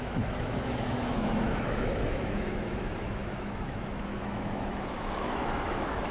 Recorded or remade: remade